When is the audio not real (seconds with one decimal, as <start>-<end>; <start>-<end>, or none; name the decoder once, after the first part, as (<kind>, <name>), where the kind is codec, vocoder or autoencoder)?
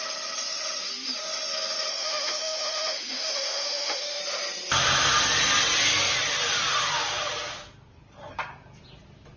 1.9-4.2 (autoencoder, DAC-VAE)